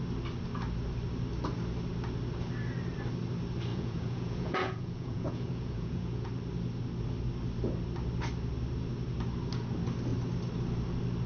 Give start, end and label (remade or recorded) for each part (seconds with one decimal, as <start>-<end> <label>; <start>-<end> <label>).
0.0-3.7 recorded; 3.7-6.3 remade; 6.3-11.3 recorded